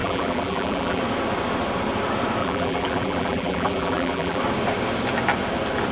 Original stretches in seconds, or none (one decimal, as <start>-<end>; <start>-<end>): 1.0-2.4; 4.4-5.9

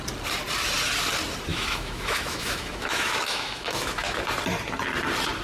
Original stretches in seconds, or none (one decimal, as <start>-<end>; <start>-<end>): 0.0-1.5; 4.2-5.4

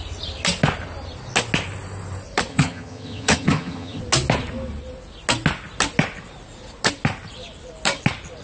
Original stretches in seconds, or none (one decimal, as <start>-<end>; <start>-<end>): 0.0-2.5; 4.0-8.4